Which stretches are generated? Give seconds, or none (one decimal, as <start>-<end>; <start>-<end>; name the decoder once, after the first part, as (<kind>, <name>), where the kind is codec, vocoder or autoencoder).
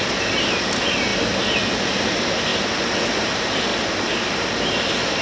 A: 0.0-1.1 (vocoder, BigVGAN v2); 1.7-2.5; 3.1-3.7; 4.3-5.2